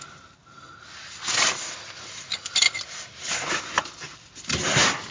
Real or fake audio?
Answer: real